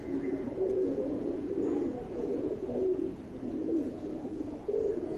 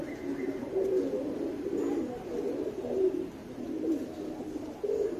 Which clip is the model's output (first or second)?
first